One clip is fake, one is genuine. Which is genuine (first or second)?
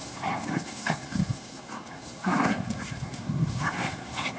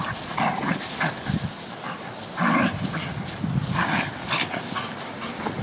second